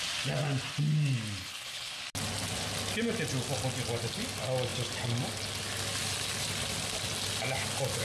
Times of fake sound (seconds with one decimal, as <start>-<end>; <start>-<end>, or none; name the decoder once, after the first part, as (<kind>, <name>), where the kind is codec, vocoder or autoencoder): 1.4-1.9 (codec, HILCodec)